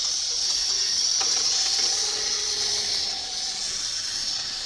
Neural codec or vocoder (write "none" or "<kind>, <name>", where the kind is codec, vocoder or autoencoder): vocoder, Vocos